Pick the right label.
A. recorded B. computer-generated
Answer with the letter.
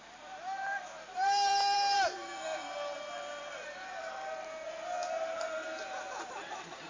B